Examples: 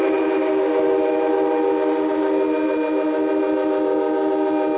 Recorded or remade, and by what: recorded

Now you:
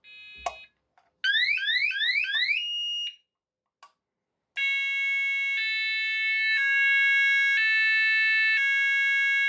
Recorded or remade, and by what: recorded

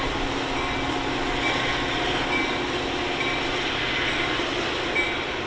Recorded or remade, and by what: recorded